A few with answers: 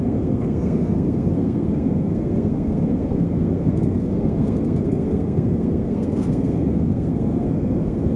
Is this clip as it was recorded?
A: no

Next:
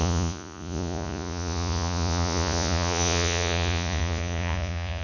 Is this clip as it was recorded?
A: no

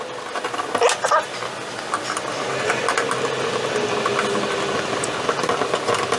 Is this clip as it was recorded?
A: yes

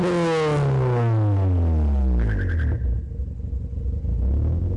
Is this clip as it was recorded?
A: yes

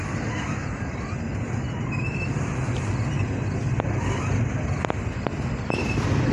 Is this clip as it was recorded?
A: yes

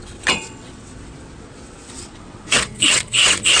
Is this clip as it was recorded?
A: no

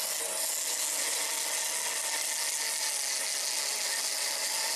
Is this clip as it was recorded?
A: yes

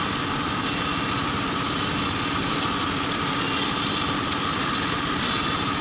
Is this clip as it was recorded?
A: yes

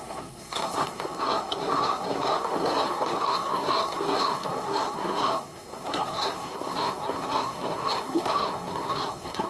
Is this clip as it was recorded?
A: no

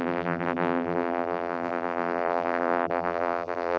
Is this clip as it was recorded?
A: no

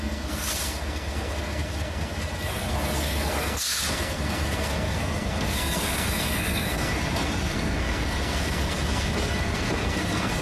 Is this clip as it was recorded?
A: no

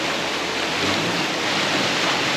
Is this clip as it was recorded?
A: yes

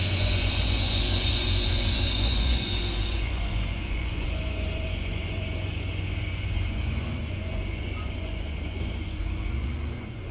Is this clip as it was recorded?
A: no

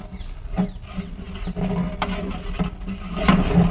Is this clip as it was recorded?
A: yes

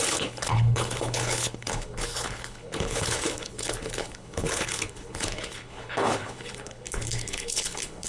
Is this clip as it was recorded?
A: no